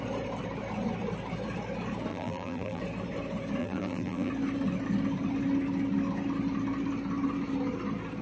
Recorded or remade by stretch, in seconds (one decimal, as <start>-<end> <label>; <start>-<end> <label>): 0.0-2.1 recorded; 2.1-2.8 remade; 2.8-3.6 recorded; 3.6-4.3 remade; 4.3-8.2 recorded